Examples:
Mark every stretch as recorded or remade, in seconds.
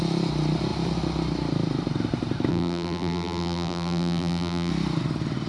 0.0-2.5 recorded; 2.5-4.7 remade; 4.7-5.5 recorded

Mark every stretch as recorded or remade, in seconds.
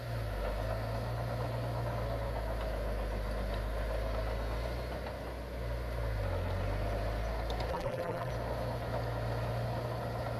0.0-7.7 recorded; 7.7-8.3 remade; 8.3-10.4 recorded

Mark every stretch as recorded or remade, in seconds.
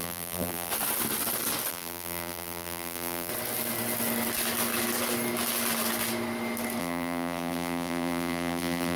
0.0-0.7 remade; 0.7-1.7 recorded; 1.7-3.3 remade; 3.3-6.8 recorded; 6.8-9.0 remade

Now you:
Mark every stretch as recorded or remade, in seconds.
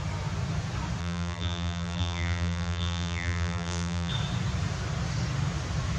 0.0-1.0 recorded; 1.0-4.1 remade; 4.1-6.0 recorded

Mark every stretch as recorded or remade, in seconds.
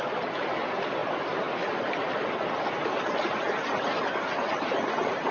0.0-5.3 recorded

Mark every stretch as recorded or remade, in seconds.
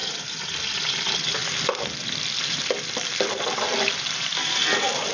0.0-1.4 recorded; 1.4-4.5 remade; 4.5-5.1 recorded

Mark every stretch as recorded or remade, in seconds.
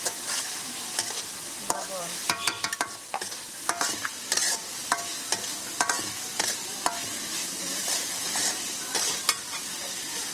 0.0-5.1 remade; 5.1-7.8 recorded; 7.8-10.3 remade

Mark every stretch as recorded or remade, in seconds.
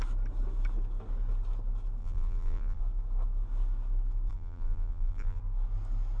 0.0-2.0 recorded; 2.0-2.8 remade; 2.8-4.3 recorded; 4.3-5.4 remade; 5.4-6.2 recorded